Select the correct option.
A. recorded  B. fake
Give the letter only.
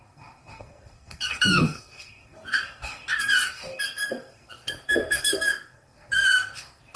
B